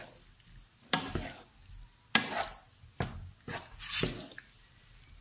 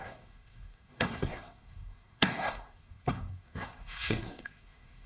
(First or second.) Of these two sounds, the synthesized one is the second